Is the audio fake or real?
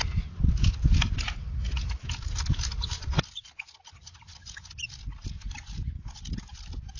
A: real